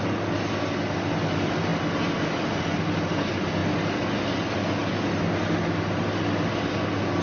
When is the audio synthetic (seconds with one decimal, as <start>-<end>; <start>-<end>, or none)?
none